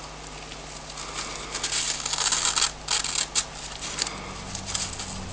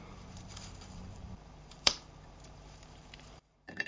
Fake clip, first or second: second